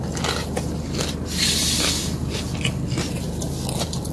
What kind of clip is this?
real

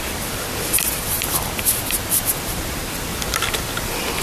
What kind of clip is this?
real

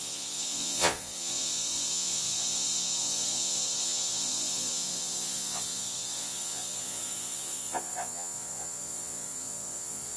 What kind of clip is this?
fake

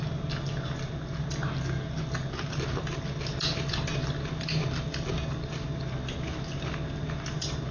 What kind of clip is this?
real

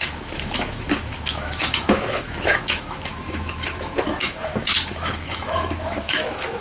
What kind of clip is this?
fake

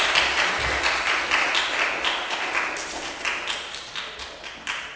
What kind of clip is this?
real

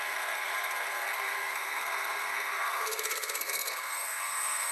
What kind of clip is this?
fake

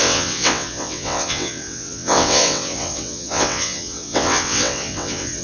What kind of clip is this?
fake